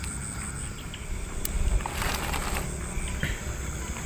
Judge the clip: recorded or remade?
recorded